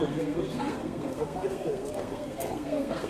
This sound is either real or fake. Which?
fake